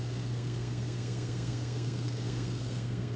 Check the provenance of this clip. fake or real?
fake